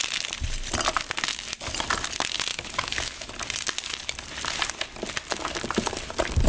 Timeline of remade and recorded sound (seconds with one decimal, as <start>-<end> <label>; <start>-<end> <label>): 0.0-2.5 recorded; 2.5-3.3 remade; 3.3-6.5 recorded